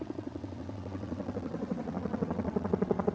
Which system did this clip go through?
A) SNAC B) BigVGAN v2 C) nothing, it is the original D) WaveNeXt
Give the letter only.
D